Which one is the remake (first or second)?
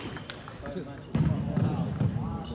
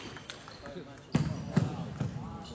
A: first